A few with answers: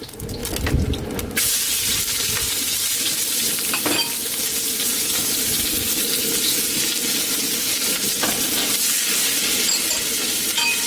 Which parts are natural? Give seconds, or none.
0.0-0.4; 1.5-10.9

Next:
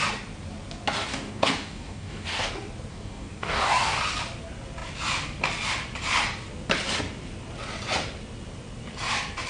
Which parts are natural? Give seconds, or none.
0.0-1.1; 2.5-2.9; 4.0-9.5

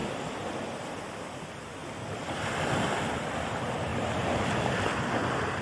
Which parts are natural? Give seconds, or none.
0.9-1.8; 2.5-3.9; 4.7-5.6

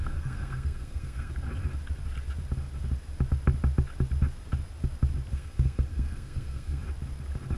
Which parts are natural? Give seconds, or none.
1.3-5.3; 6.8-7.6

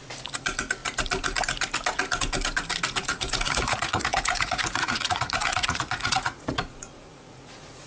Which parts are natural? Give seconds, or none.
0.0-3.0

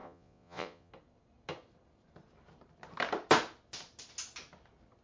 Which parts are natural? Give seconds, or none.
0.9-5.0